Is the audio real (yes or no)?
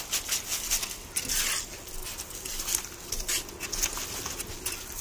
yes